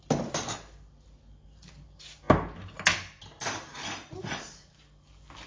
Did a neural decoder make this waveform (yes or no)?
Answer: no